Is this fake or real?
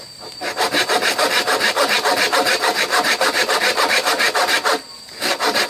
fake